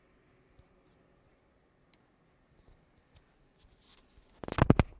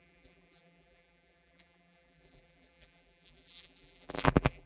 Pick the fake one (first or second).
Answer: second